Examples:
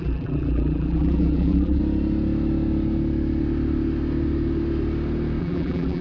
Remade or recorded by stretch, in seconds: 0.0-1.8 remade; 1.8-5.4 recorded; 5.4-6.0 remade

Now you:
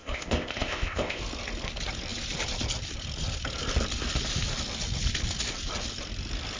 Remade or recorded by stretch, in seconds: 0.0-1.2 remade; 1.2-6.6 recorded

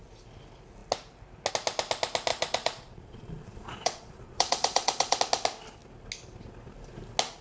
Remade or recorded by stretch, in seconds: 0.0-2.3 recorded; 2.3-5.2 remade; 5.2-7.4 recorded

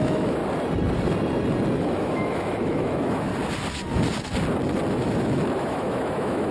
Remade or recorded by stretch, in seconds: 0.0-0.4 remade; 0.4-1.8 recorded; 1.8-3.3 remade; 3.3-4.9 recorded; 4.9-6.5 remade

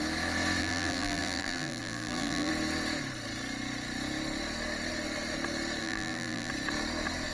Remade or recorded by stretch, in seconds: 0.0-0.6 recorded; 0.6-2.5 remade; 2.5-5.8 recorded; 5.8-6.5 remade; 6.5-7.3 recorded

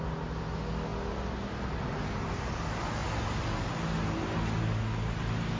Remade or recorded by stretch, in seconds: 0.0-5.6 recorded

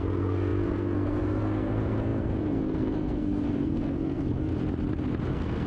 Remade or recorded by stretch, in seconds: 0.0-4.5 remade; 4.5-5.3 recorded; 5.3-5.7 remade

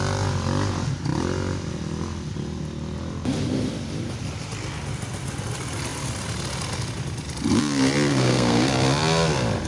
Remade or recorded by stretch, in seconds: 0.0-8.1 recorded; 8.1-8.7 remade; 8.7-9.7 recorded